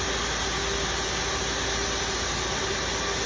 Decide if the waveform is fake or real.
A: real